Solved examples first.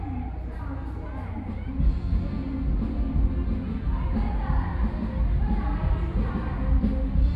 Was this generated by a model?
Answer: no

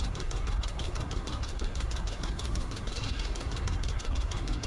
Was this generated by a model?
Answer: yes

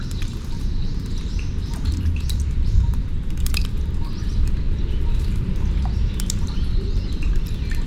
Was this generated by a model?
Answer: yes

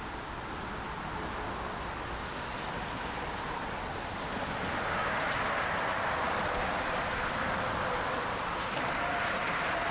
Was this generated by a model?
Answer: no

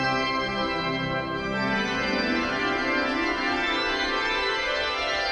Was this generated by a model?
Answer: yes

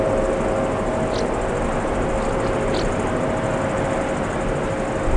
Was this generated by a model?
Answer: no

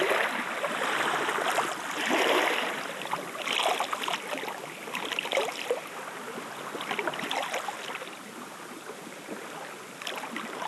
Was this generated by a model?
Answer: no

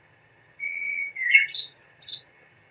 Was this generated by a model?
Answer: yes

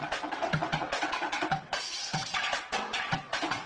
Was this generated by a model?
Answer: yes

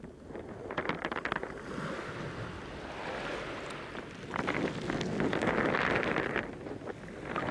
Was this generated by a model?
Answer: no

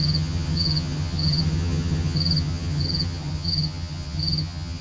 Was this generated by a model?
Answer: yes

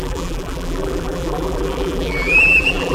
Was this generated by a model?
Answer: yes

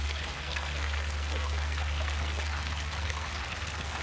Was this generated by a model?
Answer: yes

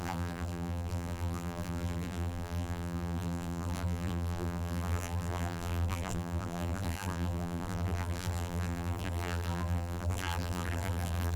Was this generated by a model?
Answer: yes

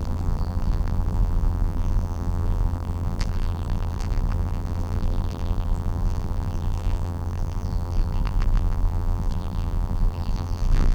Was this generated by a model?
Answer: yes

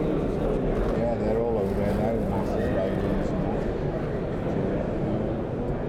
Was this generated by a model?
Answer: no